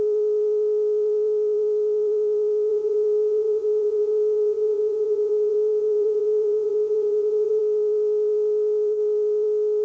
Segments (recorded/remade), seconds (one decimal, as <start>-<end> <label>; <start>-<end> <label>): 0.0-2.7 recorded; 2.7-7.6 remade; 7.6-9.8 recorded

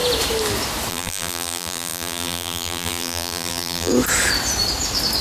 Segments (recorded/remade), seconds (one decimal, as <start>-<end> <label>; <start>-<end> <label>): 0.0-0.9 recorded; 0.9-3.9 remade; 3.9-5.2 recorded

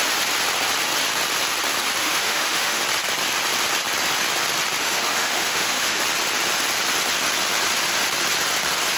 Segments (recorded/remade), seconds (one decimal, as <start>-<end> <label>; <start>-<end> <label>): 0.0-2.0 recorded; 2.0-2.8 remade; 2.8-4.8 recorded; 4.8-6.0 remade; 6.0-9.0 recorded

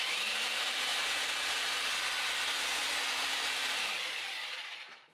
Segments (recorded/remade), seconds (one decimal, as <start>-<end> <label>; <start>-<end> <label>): 0.0-0.9 remade; 0.9-1.5 recorded; 1.5-1.9 remade; 1.9-3.1 recorded; 3.1-5.1 remade

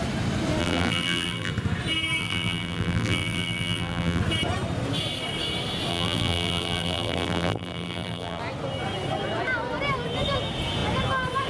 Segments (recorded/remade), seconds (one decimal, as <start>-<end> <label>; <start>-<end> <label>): 0.0-0.6 recorded; 0.6-1.5 remade; 1.5-2.2 recorded; 2.2-4.2 remade; 4.2-5.9 recorded; 5.9-8.4 remade; 8.4-11.5 recorded

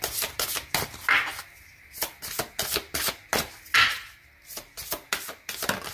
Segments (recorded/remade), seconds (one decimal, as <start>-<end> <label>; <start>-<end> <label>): 0.0-5.9 recorded

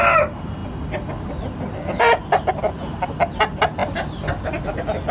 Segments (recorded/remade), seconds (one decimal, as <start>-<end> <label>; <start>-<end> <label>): 0.0-5.1 recorded